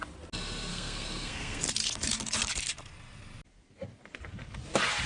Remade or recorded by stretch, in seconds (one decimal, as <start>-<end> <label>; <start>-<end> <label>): 0.0-0.7 recorded; 0.7-1.6 remade; 1.6-5.1 recorded